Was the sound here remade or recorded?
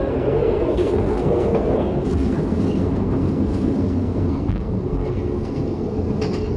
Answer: remade